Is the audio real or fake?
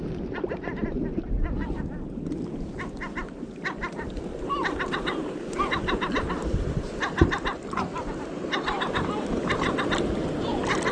real